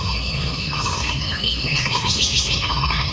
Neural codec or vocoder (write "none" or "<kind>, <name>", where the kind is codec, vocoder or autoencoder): codec, SNAC